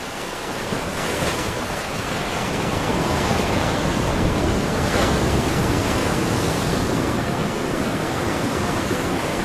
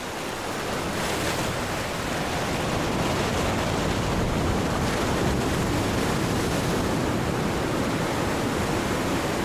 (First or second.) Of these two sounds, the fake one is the first